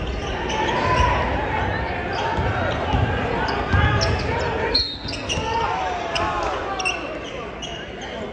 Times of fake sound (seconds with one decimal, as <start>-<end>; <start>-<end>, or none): none